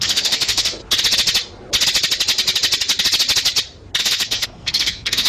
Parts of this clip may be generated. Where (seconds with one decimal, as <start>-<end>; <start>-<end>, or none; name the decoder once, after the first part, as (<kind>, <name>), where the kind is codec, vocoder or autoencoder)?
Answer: 0.0-0.8 (codec, SNAC); 4.0-5.3